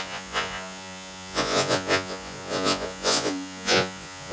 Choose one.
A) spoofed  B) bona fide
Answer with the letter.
A